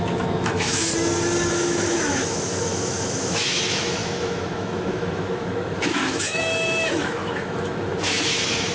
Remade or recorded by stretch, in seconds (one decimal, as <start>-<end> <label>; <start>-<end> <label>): 0.0-0.9 remade; 0.9-1.5 recorded; 1.5-8.7 remade